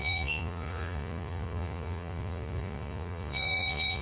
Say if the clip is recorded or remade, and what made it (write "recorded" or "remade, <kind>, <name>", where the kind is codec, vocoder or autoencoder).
remade, vocoder, Vocos